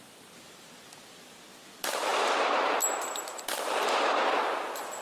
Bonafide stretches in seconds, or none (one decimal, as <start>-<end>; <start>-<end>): 0.0-5.0

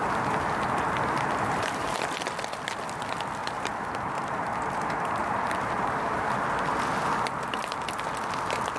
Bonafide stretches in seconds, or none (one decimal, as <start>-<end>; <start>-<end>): 1.9-3.4; 4.6-5.2; 6.2-8.8